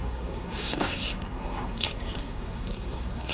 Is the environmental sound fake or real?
fake